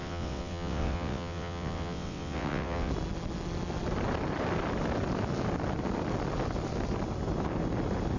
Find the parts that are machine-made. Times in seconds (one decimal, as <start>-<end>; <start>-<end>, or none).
0.0-2.9